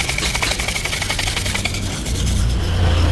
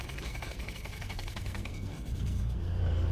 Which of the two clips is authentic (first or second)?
first